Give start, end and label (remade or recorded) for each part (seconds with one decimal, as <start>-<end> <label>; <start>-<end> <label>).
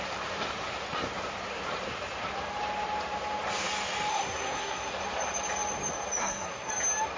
0.0-4.1 recorded; 4.1-4.9 remade; 4.9-6.2 recorded; 6.2-6.7 remade; 6.7-7.2 recorded